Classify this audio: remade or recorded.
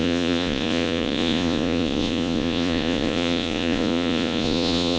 remade